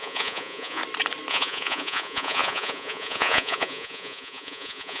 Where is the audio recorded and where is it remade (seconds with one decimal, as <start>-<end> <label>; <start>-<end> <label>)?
0.0-0.8 remade; 0.8-1.3 recorded; 1.3-5.0 remade